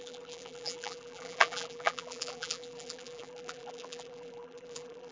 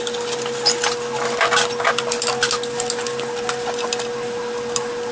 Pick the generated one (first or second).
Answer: first